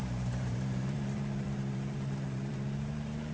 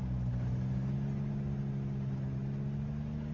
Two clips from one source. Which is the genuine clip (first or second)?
second